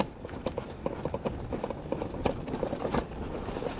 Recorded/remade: recorded